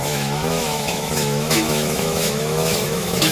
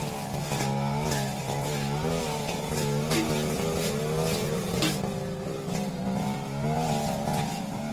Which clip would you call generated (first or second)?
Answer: first